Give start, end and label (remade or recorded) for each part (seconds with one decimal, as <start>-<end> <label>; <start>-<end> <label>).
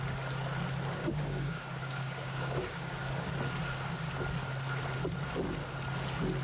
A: 0.0-1.0 recorded; 1.0-3.3 remade; 3.3-6.4 recorded